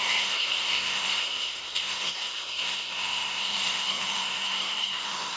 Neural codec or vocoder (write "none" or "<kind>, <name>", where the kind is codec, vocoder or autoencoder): codec, SNAC